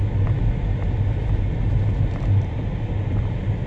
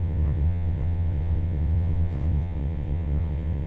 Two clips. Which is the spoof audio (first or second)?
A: second